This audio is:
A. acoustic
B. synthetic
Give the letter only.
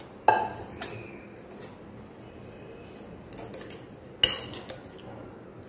A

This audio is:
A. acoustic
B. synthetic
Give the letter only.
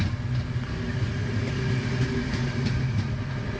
A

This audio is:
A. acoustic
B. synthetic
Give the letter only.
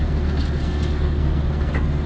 B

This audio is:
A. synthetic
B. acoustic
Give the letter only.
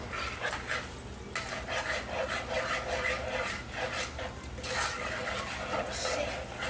B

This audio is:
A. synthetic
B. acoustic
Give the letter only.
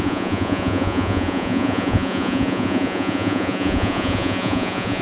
A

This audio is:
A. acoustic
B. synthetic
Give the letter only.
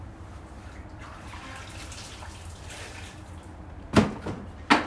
A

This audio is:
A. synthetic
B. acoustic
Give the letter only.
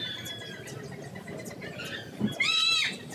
B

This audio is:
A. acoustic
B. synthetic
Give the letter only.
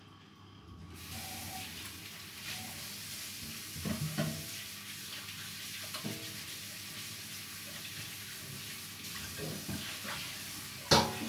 A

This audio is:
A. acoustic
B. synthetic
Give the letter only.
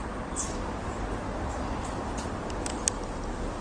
A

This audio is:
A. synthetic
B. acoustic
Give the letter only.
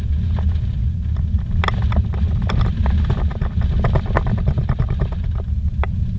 B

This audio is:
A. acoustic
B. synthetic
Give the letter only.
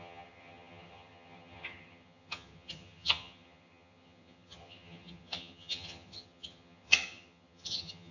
B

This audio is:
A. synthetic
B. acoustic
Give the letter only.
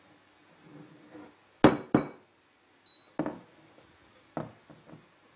B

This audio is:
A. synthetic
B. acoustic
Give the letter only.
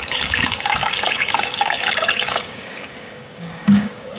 A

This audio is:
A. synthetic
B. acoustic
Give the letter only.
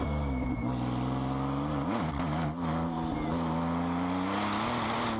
B